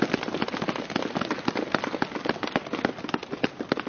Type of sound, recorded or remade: recorded